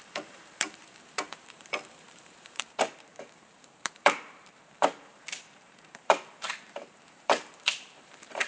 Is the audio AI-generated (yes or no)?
yes